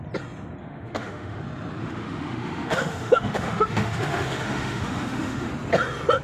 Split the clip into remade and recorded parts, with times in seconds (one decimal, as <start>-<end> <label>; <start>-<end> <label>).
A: 0.0-0.6 recorded; 0.6-1.4 remade; 1.4-1.8 recorded; 1.8-5.5 remade; 5.5-6.2 recorded